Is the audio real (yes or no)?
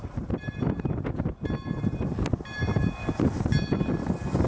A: yes